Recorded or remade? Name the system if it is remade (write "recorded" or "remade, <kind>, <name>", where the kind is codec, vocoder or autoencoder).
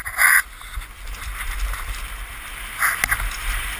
recorded